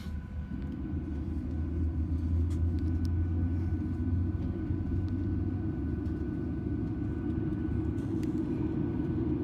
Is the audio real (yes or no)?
yes